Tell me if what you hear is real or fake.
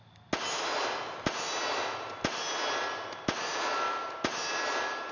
real